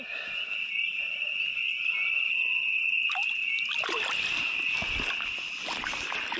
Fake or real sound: real